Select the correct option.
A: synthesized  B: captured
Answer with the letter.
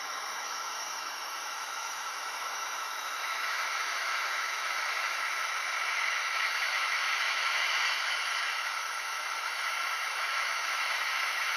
A